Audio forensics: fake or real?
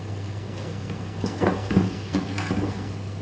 fake